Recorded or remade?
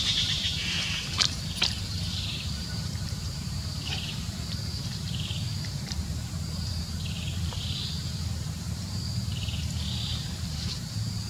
remade